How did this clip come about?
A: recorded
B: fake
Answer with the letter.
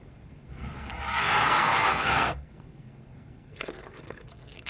B